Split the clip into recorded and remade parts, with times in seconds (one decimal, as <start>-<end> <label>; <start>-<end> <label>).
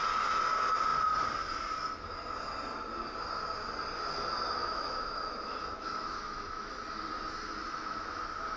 0.0-4.6 recorded; 4.6-6.7 remade; 6.7-7.6 recorded; 7.6-8.1 remade; 8.1-8.6 recorded